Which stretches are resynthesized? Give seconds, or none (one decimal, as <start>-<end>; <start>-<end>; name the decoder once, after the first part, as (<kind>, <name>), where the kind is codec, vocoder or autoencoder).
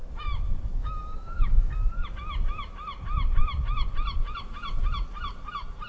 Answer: 0.8-1.7 (autoencoder, DAC-VAE)